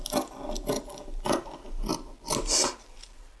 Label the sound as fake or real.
real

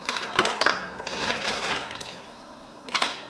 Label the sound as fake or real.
fake